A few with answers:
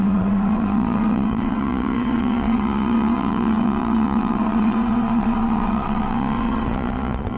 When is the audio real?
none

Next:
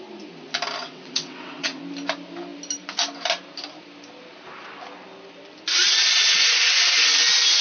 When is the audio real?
0.0-0.8; 1.8-7.6

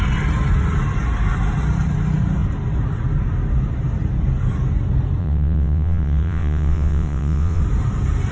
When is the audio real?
0.0-5.2; 7.6-8.3

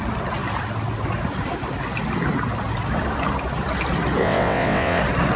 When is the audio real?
0.0-4.2; 5.0-5.4

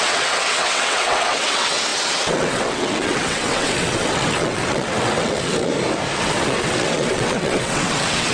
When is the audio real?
5.7-6.2

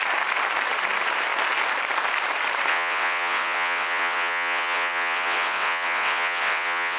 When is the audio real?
0.0-2.7

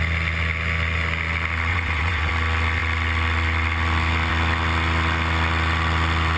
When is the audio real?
0.0-1.7; 2.3-6.4